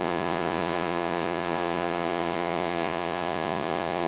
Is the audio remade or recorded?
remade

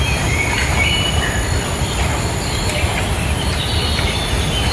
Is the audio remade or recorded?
recorded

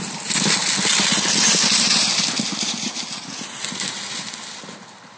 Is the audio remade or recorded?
recorded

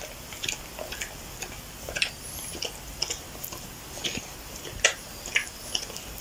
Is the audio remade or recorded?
recorded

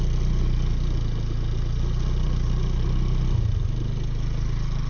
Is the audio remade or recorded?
recorded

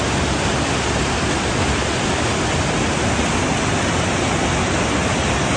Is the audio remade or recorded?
recorded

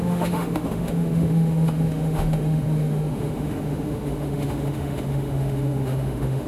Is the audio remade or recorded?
remade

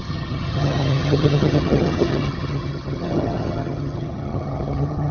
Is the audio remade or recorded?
remade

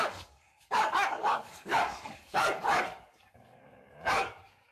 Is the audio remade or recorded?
remade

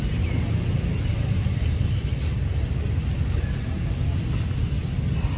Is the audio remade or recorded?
recorded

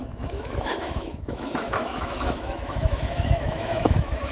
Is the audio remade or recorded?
remade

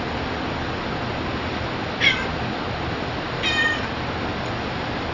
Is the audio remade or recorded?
recorded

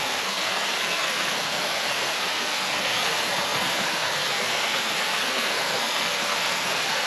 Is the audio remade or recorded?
remade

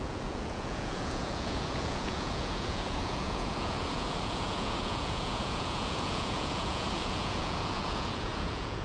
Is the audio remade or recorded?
remade